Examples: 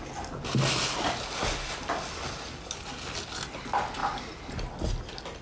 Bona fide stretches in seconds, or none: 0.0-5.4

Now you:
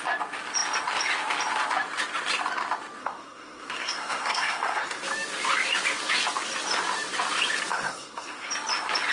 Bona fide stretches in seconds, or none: 0.0-3.0; 5.0-7.7; 8.5-9.1

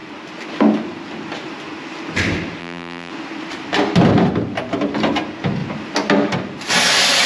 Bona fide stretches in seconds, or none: 0.0-2.6; 3.1-7.3